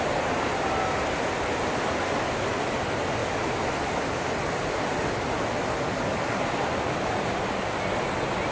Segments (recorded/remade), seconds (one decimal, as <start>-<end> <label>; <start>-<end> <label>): 0.0-3.2 recorded; 3.2-4.2 remade; 4.2-6.1 recorded; 6.1-7.7 remade; 7.7-8.5 recorded